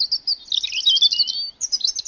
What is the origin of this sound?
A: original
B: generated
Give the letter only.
A